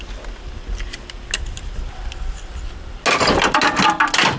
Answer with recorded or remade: recorded